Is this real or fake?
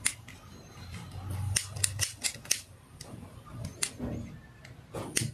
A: real